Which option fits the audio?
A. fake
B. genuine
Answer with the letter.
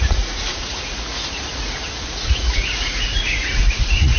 A